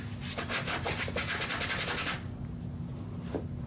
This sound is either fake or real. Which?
real